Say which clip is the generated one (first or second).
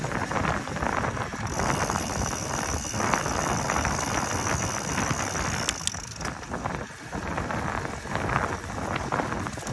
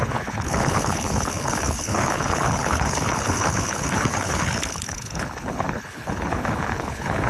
second